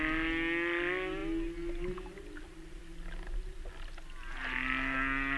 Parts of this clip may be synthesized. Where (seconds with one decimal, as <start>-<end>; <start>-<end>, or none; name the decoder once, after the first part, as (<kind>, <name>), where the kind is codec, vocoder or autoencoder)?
none